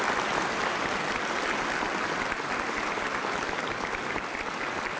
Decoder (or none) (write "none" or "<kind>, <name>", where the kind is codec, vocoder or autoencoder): none